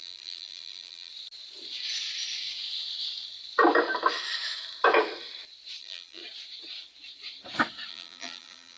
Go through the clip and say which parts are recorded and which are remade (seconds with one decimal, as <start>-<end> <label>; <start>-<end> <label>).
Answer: 0.0-1.1 remade; 1.1-5.8 recorded; 5.8-6.2 remade; 6.2-7.9 recorded; 7.9-8.8 remade